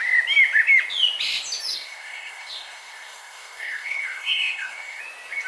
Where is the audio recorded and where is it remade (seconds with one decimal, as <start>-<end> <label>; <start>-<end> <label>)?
0.0-1.7 recorded; 1.7-5.0 remade; 5.0-5.5 recorded